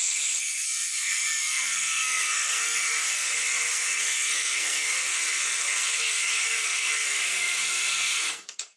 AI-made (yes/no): yes